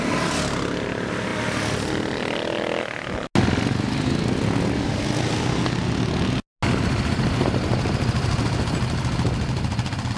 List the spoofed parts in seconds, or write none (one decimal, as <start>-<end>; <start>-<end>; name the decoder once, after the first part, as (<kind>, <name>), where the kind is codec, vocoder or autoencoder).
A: none